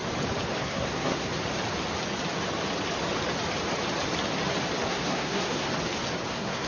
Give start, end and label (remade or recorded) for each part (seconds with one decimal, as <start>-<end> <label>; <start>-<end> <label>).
0.0-0.6 recorded; 0.6-1.3 remade; 1.3-4.9 recorded; 4.9-5.7 remade; 5.7-6.3 recorded; 6.3-6.7 remade